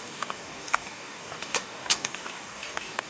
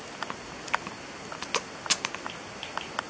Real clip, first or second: second